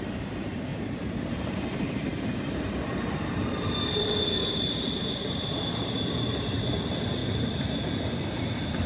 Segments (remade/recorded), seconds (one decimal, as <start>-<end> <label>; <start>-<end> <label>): 0.0-8.9 remade